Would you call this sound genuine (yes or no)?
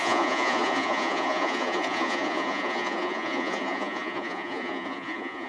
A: no